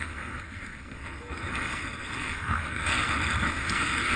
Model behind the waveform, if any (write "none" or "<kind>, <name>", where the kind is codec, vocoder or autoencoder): codec, SNAC